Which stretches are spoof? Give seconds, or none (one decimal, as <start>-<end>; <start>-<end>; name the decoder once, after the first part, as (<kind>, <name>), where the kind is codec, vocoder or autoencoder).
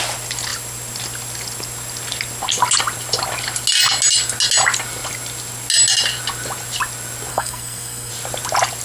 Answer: 7.3-8.1 (codec, SNAC)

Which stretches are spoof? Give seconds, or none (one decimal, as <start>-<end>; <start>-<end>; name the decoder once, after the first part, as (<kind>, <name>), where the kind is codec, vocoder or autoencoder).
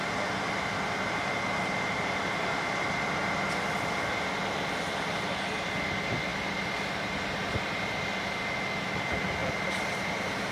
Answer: 1.6-2.2 (vocoder, BigVGAN v2); 9.4-10.5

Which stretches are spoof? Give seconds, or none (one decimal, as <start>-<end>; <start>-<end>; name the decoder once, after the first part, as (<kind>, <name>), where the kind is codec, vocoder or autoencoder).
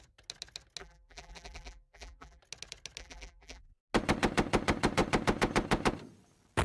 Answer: 0.8-2.4 (vocoder, BigVGAN v2); 3.0-3.8